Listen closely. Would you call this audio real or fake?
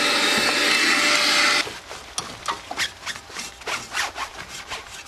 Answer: real